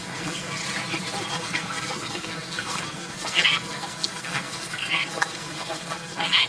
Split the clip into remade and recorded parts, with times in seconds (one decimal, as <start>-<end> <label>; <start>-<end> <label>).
0.0-0.6 remade; 0.6-1.3 recorded; 1.3-6.5 remade